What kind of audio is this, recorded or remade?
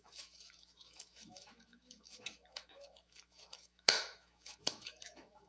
remade